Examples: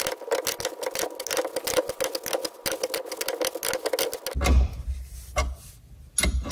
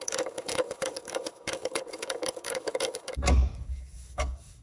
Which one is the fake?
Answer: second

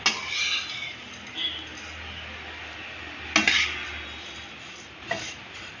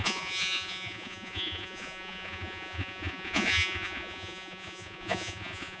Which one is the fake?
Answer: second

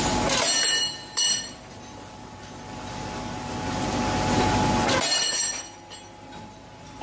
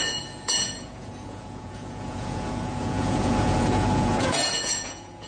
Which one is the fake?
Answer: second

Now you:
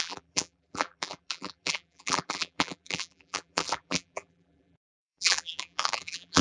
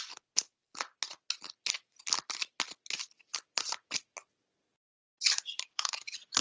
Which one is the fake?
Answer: first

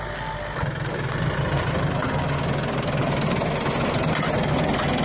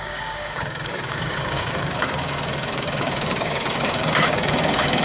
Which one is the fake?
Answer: second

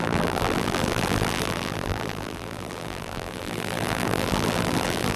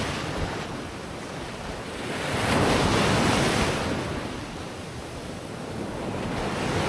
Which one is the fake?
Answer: first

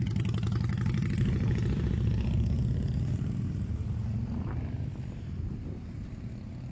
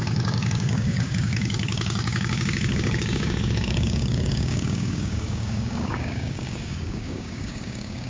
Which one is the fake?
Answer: second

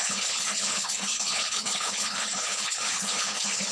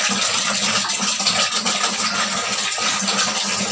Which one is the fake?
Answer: first